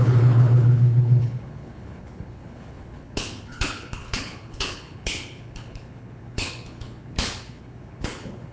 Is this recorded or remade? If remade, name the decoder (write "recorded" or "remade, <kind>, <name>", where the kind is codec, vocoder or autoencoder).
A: remade, codec, HILCodec